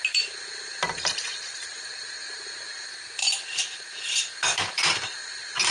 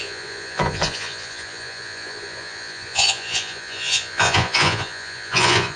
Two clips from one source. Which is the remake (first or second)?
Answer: second